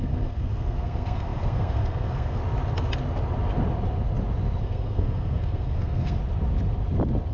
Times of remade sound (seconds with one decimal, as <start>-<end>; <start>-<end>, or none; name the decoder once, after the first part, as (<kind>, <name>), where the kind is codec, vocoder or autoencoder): 0.0-2.4 (codec, SNAC); 4.6-6.2